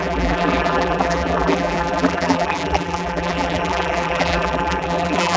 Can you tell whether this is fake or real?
fake